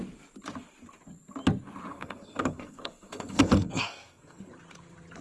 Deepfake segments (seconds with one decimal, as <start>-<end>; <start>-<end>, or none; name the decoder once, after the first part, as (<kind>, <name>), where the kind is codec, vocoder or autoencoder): 1.9-4.5 (codec, SNAC)

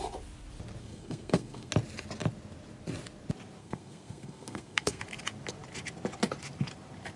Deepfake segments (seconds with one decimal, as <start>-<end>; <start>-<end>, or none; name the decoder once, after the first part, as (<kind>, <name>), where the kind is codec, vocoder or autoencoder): 0.8-1.7 (codec, SNAC); 3.6-5.0

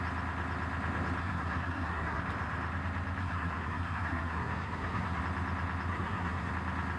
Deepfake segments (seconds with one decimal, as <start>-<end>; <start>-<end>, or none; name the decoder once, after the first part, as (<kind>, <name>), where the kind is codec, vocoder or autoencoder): 1.2-2.2 (codec, SNAC); 3.2-5.2; 5.9-6.5

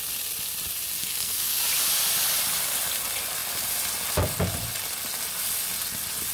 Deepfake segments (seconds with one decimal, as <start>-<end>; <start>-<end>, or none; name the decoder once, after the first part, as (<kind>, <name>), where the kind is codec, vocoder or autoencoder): 1.0-1.6 (codec, SNAC)

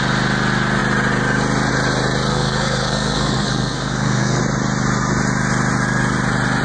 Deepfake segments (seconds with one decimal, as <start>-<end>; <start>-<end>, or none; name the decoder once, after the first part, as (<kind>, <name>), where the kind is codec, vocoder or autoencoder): 2.3-4.4 (codec, SNAC)

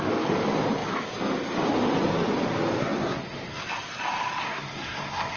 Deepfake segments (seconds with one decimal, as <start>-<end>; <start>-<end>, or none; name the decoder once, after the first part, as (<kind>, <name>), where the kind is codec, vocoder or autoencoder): 2.8-3.6 (codec, SNAC); 4.4-5.4

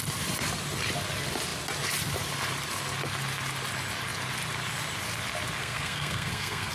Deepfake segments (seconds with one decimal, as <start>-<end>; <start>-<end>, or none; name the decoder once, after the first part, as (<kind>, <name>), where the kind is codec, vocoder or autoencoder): 5.6-6.7 (codec, SNAC)

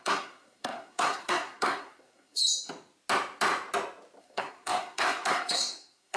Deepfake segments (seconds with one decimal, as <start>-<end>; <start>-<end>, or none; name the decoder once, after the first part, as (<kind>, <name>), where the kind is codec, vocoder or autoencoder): 0.0-2.4 (codec, SNAC); 4.2-6.2